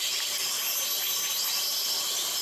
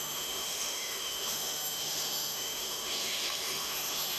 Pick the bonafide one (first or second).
first